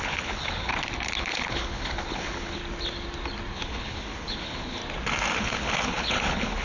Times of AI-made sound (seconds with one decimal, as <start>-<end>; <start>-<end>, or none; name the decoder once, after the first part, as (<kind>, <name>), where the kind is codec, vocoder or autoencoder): 0.0-0.7 (codec, HILCodec); 1.2-2.6; 3.5-4.8; 5.4-6.6